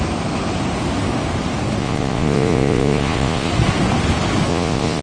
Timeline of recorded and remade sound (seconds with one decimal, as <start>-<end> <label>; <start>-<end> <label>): 0.0-1.8 recorded; 1.8-3.5 remade; 3.5-4.5 recorded; 4.5-5.0 remade